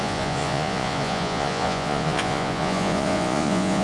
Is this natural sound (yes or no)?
no